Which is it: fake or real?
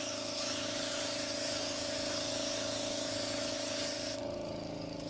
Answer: fake